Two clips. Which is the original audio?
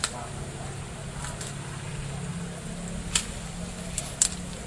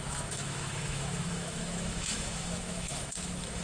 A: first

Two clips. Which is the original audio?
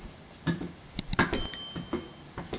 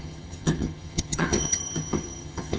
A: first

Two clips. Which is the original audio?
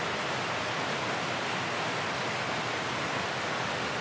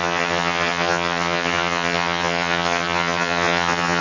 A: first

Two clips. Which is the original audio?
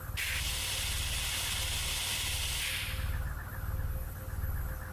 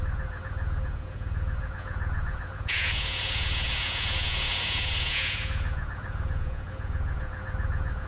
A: first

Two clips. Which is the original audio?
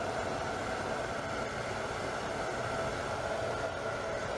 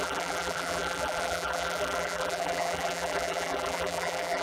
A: first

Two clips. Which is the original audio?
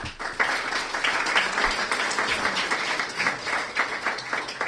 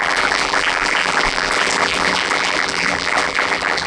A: first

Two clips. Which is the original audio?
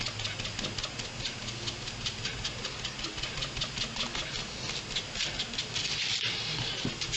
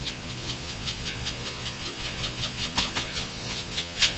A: first